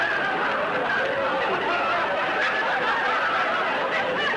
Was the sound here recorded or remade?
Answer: recorded